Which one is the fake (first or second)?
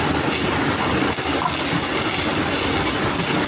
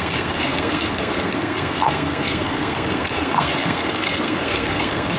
second